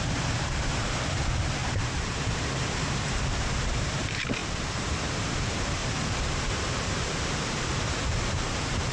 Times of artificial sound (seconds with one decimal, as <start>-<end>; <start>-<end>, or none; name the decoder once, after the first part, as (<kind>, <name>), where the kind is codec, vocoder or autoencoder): 0.0-5.8 (vocoder, BigVGAN v2); 8.1-8.9

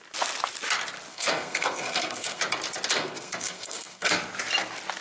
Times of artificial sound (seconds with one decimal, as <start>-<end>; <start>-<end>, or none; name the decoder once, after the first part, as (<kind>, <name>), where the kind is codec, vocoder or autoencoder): 1.1-2.4 (codec, SNAC); 3.0-4.1